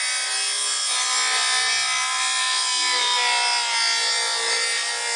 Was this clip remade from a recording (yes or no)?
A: no